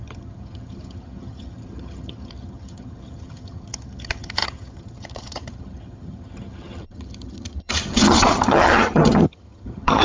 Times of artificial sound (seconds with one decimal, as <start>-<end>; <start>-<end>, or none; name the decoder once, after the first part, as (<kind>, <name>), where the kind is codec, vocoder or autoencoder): 0.0-10.0 (vocoder, HiFi-GAN)